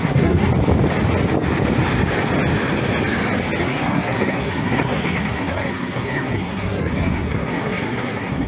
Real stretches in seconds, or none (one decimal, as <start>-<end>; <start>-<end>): 0.5-3.6